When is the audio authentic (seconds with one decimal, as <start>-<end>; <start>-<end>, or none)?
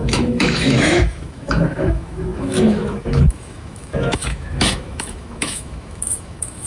none